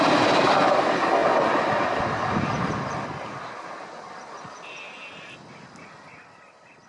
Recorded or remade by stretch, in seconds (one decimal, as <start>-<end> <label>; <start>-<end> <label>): 0.0-6.9 recorded